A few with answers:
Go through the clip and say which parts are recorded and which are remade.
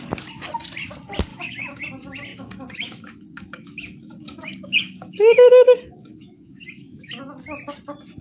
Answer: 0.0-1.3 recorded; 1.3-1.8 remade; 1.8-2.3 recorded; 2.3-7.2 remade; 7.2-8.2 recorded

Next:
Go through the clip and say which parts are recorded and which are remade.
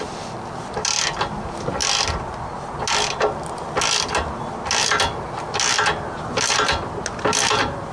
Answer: 0.0-7.9 recorded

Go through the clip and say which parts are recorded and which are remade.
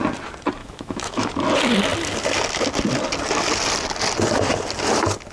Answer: 0.0-0.6 recorded; 0.6-1.3 remade; 1.3-5.3 recorded